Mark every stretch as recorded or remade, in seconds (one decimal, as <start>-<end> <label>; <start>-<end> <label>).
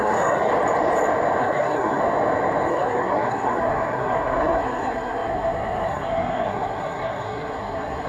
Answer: 0.0-0.5 remade; 0.5-1.4 recorded; 1.4-2.0 remade; 2.0-2.7 recorded; 2.7-8.1 remade